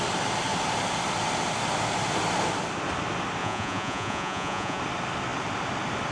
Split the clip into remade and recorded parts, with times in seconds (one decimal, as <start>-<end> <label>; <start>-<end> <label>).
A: 0.0-3.4 recorded; 3.4-4.8 remade; 4.8-6.1 recorded